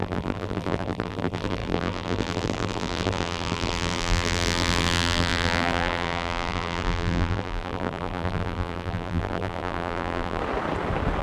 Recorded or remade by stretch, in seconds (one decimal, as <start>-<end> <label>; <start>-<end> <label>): 0.0-10.4 remade; 10.4-11.2 recorded